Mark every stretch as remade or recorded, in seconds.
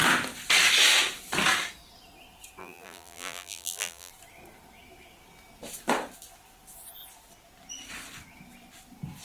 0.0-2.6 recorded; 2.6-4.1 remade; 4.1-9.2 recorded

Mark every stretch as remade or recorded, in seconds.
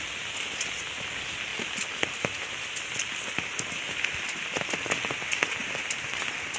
0.0-6.6 recorded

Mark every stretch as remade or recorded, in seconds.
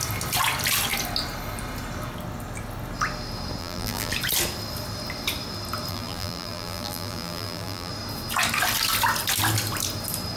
0.0-3.6 recorded; 3.6-4.1 remade; 4.1-5.9 recorded; 5.9-7.9 remade; 7.9-10.4 recorded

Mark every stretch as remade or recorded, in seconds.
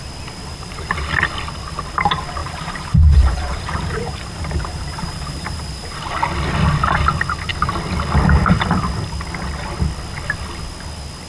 0.0-0.5 recorded; 0.5-1.3 remade; 1.3-2.4 recorded; 2.4-5.6 remade; 5.6-11.3 recorded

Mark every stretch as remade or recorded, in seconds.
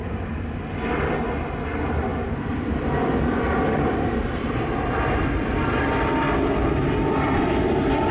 0.0-2.1 recorded; 2.1-6.2 remade; 6.2-8.1 recorded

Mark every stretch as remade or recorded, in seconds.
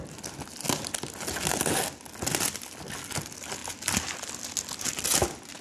0.0-5.6 recorded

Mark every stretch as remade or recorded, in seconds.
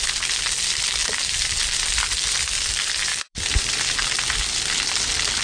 0.0-1.0 recorded; 1.0-1.6 remade; 1.6-3.1 recorded; 3.1-3.8 remade; 3.8-5.4 recorded